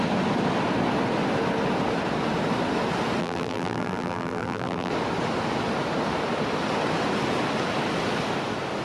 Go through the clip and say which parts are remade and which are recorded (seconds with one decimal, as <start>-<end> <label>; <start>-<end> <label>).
0.0-3.2 recorded; 3.2-4.9 remade; 4.9-8.8 recorded